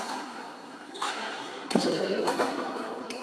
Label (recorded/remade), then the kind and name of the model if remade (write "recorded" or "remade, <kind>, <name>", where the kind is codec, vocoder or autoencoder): remade, codec, SNAC